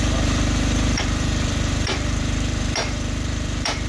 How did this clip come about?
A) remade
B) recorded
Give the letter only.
A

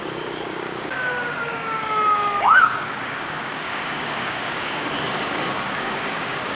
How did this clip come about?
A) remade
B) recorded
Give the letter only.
A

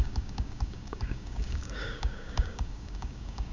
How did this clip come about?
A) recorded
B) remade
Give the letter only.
B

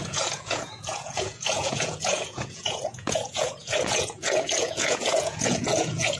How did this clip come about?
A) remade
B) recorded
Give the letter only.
A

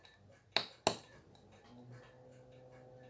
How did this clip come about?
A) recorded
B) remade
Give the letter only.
A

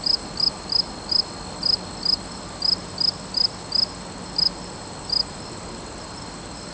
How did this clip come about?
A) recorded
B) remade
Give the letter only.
A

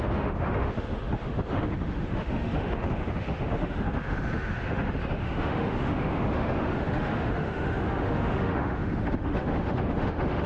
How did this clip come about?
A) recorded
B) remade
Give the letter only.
B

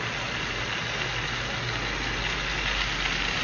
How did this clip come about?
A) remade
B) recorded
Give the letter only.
B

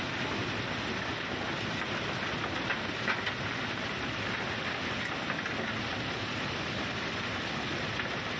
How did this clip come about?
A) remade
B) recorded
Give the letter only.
B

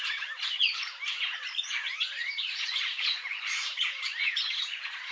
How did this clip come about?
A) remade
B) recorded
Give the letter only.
A